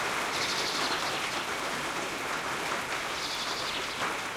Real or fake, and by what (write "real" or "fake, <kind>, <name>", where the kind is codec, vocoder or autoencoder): real